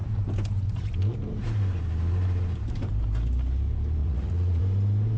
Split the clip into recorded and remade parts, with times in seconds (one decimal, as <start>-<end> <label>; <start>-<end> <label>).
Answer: 0.0-4.0 recorded; 4.0-4.6 remade; 4.6-5.2 recorded